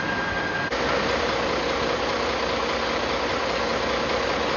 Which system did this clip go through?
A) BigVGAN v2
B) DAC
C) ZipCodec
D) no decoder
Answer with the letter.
D